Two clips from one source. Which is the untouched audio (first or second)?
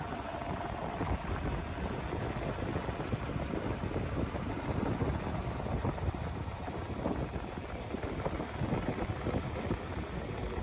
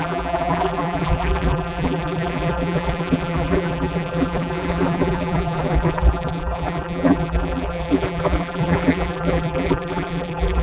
first